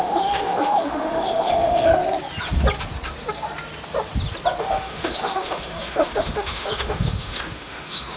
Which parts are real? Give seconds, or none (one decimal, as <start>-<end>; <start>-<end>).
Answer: 1.9-4.6